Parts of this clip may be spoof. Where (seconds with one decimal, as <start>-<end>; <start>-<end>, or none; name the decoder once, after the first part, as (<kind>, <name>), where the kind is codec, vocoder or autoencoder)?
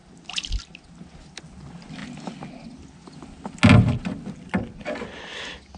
none